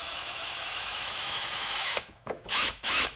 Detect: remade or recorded remade